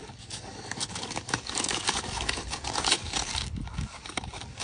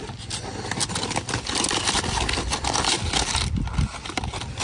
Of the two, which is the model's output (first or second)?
first